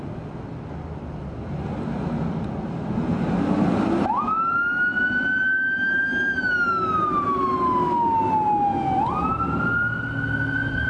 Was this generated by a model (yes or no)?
no